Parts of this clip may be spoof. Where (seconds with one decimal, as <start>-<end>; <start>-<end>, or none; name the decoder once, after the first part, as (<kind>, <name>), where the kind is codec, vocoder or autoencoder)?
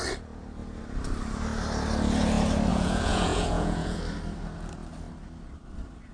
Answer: 2.7-4.0 (vocoder, Vocos)